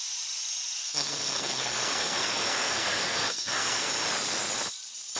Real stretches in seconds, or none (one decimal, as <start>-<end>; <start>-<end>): 0.0-0.8; 3.9-5.2

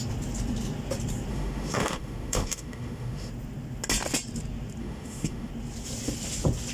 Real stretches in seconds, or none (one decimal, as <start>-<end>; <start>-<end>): 0.0-1.3; 3.3-4.8; 5.5-6.7

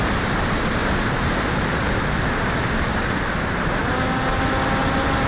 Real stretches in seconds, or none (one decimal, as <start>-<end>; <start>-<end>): 3.8-4.8